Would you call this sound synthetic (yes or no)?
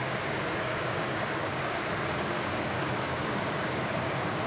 yes